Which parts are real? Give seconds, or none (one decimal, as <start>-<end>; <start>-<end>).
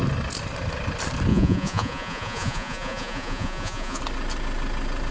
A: 0.0-1.3; 4.0-5.1